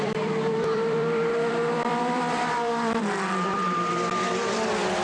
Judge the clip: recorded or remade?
remade